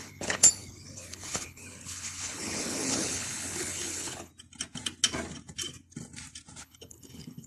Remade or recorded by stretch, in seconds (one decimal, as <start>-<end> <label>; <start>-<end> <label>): 0.0-4.3 remade; 4.3-6.6 recorded; 6.6-7.5 remade